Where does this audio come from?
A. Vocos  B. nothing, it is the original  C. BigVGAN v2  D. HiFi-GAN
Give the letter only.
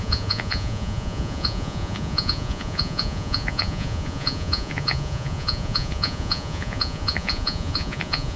A